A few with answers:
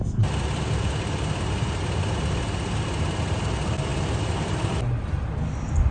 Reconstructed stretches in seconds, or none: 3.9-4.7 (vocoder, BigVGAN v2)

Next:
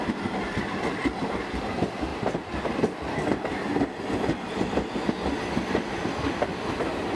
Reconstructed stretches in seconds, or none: none

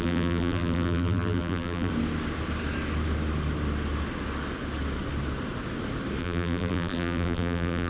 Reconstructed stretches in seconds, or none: 0.0-1.9 (vocoder, BigVGAN v2); 6.2-7.9